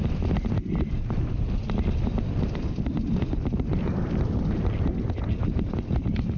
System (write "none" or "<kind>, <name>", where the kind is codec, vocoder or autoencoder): none